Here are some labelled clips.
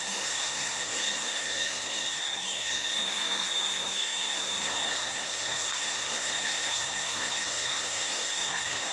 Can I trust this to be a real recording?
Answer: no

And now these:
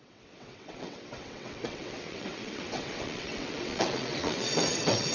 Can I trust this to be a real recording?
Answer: no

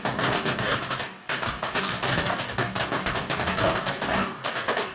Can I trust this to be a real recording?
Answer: no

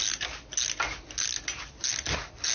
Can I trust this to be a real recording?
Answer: yes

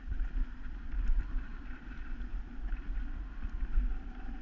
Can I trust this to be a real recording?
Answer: no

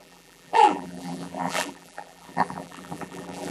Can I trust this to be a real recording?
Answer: no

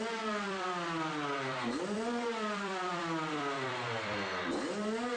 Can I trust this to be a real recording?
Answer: no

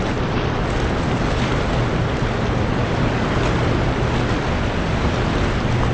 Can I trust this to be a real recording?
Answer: yes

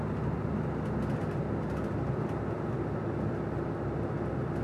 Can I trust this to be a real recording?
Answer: yes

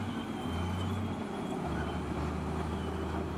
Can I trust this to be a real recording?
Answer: yes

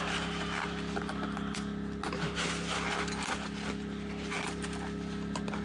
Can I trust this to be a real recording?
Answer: yes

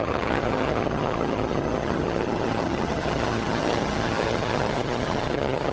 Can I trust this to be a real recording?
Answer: no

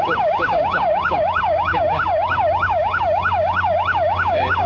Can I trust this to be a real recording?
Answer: no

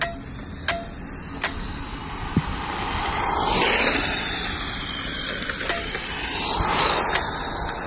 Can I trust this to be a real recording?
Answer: yes